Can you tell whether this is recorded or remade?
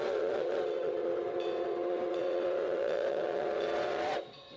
remade